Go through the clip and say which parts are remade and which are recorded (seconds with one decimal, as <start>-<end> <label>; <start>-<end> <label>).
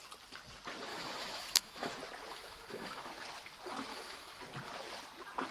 0.0-0.9 recorded; 0.9-1.9 remade; 1.9-2.3 recorded; 2.3-3.1 remade; 3.1-3.9 recorded; 3.9-4.4 remade; 4.4-5.5 recorded